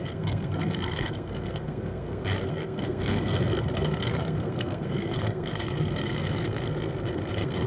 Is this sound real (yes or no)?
no